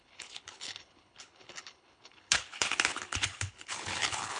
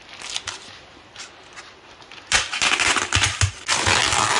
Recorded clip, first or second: second